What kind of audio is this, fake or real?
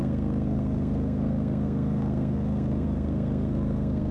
fake